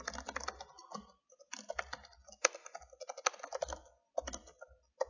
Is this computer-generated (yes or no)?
no